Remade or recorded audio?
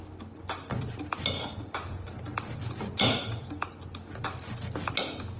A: recorded